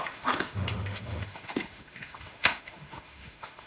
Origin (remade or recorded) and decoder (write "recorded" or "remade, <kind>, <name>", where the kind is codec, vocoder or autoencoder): remade, autoencoder, DAC-VAE